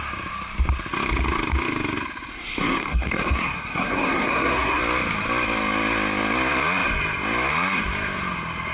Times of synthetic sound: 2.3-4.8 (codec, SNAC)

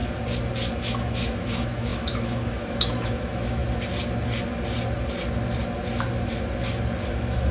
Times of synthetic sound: 0.8-3.6 (autoencoder, DAC-VAE); 7.1-7.5

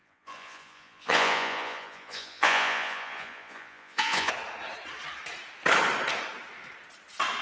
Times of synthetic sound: 0.0-4.3 (vocoder, Vocos)